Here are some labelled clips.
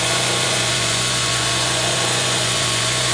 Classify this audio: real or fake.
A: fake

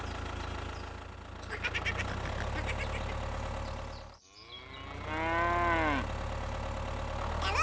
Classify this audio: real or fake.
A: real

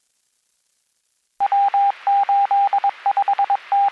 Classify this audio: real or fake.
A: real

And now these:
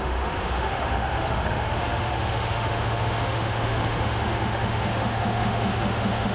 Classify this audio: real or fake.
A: fake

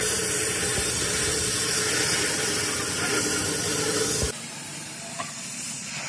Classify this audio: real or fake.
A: real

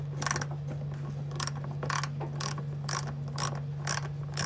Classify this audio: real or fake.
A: real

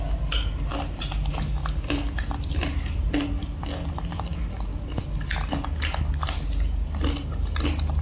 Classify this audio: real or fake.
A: real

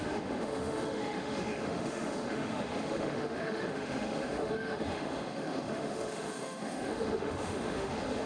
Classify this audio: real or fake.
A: fake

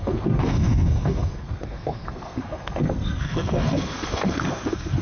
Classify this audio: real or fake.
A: fake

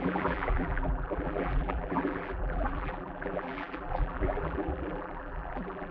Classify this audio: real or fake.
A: fake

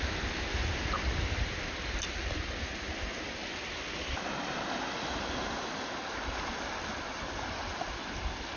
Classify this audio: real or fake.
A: real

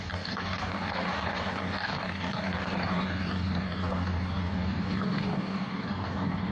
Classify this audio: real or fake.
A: fake